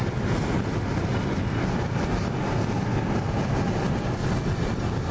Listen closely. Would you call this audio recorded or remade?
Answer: recorded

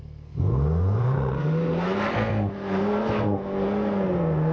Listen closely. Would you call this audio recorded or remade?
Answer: remade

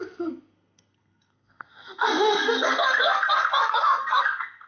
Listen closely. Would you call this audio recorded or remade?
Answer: remade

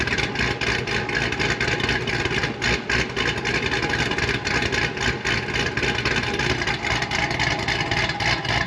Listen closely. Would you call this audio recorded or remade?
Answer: recorded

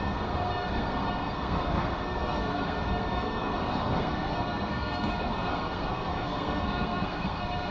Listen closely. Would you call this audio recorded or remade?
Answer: remade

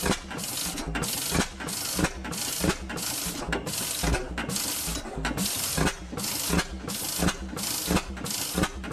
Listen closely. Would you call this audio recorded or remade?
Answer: recorded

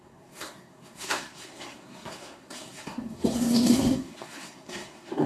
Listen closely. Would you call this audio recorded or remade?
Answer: remade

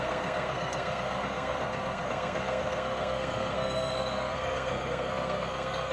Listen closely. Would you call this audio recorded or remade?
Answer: remade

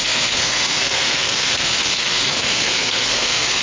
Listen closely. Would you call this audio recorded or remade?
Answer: remade